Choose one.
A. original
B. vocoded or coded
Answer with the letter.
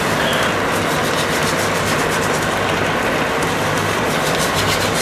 A